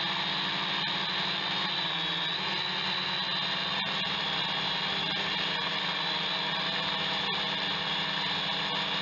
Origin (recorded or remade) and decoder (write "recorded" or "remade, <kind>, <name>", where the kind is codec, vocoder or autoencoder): recorded